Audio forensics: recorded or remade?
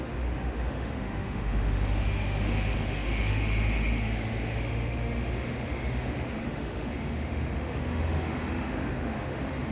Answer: remade